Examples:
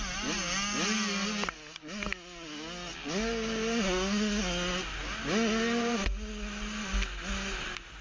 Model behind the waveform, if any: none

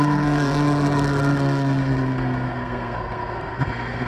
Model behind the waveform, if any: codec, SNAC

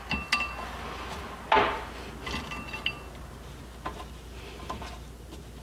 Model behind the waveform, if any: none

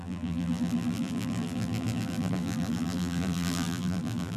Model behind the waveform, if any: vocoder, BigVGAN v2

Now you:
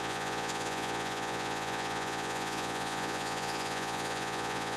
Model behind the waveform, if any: vocoder, Vocos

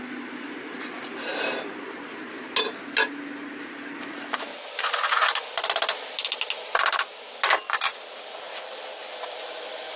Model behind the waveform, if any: none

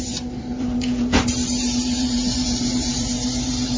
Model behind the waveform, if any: vocoder, BigVGAN v2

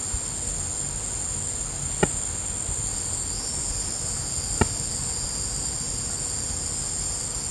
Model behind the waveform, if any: none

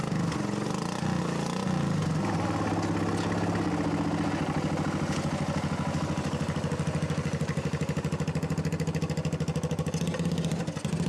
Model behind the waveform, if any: none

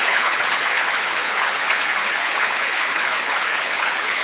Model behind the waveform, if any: codec, HILCodec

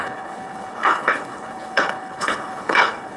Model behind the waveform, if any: codec, HILCodec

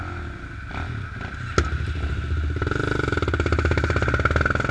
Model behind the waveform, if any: none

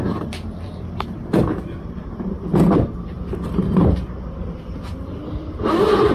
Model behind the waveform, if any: vocoder, BigVGAN v2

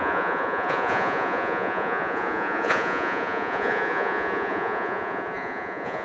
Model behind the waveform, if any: vocoder, Vocos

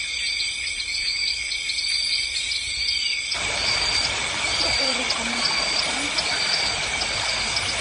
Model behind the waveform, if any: none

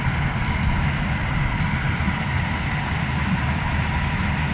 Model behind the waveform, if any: none